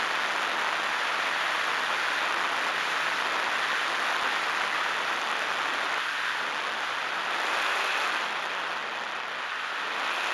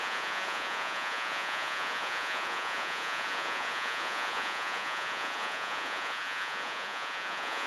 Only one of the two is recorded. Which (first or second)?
first